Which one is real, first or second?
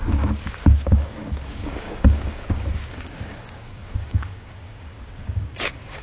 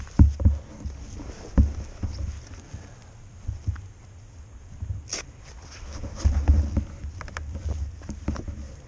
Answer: second